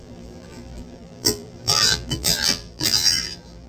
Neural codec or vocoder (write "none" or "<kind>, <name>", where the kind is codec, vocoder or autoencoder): vocoder, BigVGAN v2